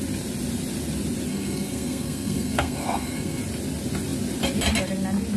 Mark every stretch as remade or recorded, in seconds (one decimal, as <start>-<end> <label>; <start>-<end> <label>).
0.0-1.3 recorded; 1.3-3.4 remade; 3.4-5.4 recorded